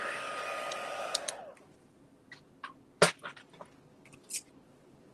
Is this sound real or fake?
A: real